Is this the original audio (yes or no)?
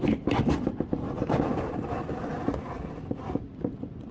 yes